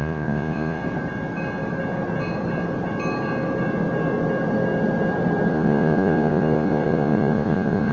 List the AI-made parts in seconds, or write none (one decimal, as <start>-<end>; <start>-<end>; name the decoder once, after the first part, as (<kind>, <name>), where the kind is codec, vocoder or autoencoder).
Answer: 0.0-0.8 (vocoder, Vocos); 5.5-7.9